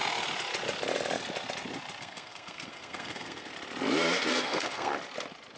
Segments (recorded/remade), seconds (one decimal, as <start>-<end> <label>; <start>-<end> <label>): 0.0-2.0 recorded; 2.0-3.5 remade; 3.5-4.3 recorded; 4.3-4.9 remade; 4.9-5.6 recorded